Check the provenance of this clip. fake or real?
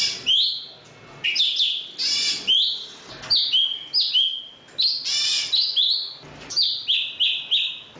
real